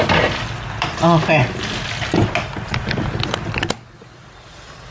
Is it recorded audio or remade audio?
recorded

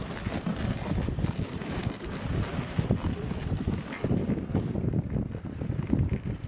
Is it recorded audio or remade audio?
recorded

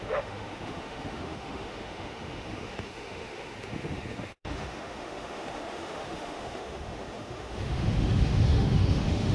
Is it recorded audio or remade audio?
remade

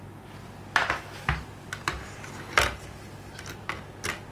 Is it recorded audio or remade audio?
recorded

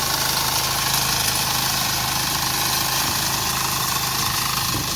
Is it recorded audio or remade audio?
recorded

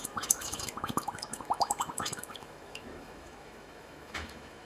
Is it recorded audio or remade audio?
remade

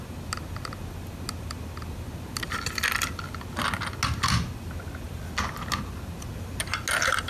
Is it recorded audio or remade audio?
recorded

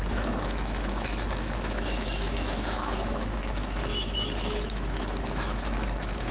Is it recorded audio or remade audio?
remade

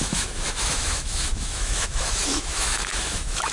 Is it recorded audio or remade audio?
remade